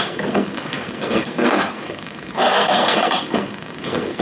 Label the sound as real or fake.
fake